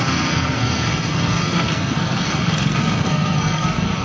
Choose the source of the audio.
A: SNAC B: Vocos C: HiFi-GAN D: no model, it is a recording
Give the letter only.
A